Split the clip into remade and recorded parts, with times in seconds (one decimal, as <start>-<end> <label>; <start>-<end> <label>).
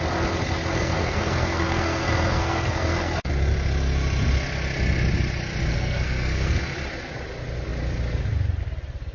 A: 0.0-0.7 recorded; 0.7-3.3 remade; 3.3-5.7 recorded; 5.7-6.6 remade; 6.6-9.1 recorded